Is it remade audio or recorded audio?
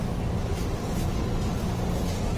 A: recorded